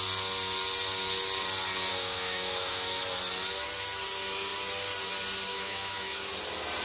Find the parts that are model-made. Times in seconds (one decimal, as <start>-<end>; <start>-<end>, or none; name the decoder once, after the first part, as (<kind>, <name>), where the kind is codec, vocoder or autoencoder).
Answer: 1.9-3.0 (autoencoder, DAC-VAE); 5.5-6.2